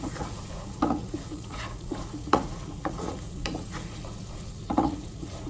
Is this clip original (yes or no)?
no